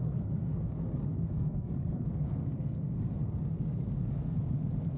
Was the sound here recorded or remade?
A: remade